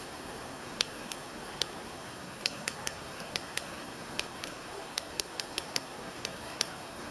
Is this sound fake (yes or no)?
yes